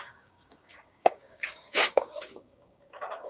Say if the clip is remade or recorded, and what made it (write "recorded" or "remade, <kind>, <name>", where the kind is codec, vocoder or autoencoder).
remade, codec, DAC